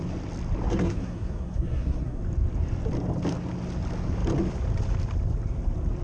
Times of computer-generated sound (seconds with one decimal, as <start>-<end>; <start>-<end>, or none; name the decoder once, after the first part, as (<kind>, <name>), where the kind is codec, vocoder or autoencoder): 0.7-2.2 (codec, SNAC)